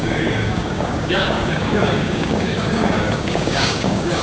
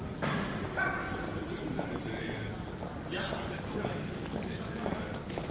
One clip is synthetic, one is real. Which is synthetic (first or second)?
first